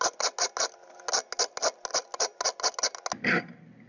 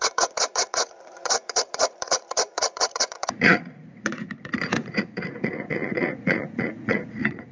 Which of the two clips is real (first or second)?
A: first